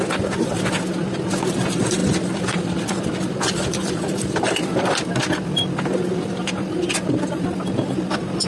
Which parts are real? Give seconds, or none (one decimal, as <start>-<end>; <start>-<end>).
none